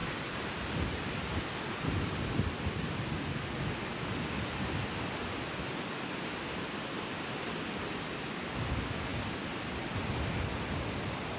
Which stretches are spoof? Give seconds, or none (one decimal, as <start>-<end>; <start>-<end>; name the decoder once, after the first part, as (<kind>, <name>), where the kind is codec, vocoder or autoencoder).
none